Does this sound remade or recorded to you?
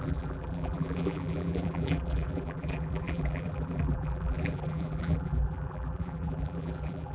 remade